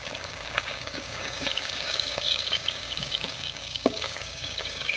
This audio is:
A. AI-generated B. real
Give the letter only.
A